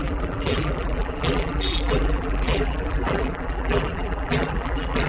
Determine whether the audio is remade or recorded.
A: remade